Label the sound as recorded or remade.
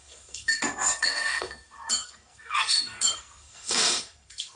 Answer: remade